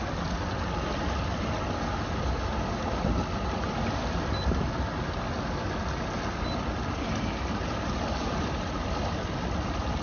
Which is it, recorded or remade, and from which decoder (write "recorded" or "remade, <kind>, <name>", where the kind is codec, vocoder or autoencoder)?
recorded